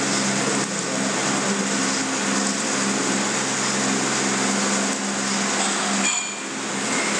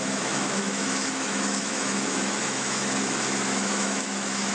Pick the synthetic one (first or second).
second